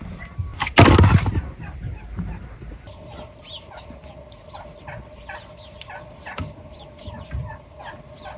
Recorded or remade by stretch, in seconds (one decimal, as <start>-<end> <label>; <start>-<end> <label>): 0.0-8.4 recorded